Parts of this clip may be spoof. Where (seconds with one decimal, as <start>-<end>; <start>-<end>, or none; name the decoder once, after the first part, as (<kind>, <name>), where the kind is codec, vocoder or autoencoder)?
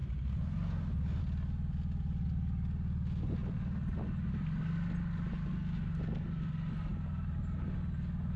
none